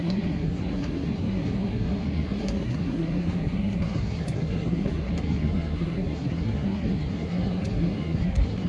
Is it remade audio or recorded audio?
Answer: remade